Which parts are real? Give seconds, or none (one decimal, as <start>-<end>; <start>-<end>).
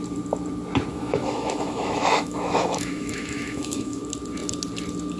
0.0-0.9; 4.0-5.2